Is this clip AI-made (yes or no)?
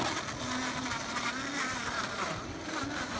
no